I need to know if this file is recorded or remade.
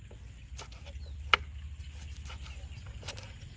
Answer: recorded